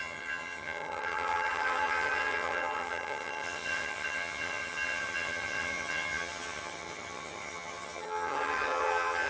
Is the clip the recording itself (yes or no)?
no